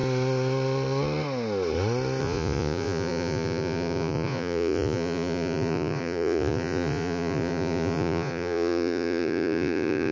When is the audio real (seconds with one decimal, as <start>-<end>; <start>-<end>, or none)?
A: 0.0-2.2